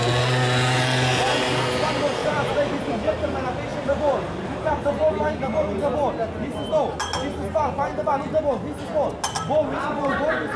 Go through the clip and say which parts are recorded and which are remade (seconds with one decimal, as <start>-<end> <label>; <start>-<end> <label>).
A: 0.0-2.2 recorded; 2.2-3.1 remade; 3.1-3.7 recorded; 3.7-5.1 remade; 5.1-10.6 recorded